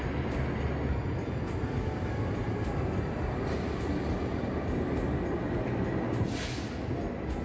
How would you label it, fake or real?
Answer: real